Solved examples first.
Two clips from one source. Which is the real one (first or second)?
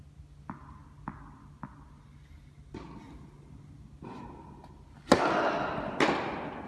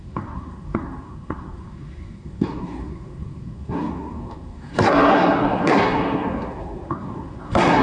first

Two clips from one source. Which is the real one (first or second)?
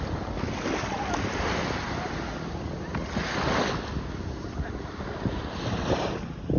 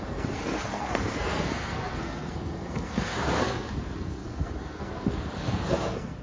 first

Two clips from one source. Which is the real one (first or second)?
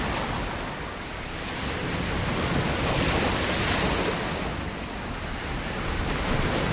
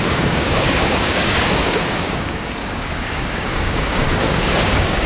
first